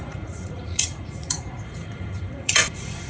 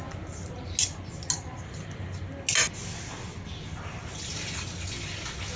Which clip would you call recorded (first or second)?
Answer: second